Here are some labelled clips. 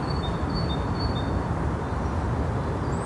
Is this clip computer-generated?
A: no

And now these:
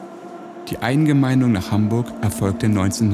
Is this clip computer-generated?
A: no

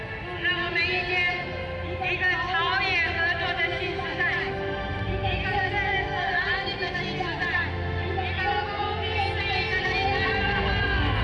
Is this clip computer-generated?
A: no